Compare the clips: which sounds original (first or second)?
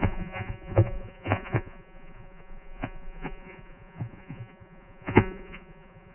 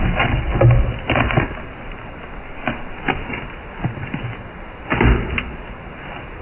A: second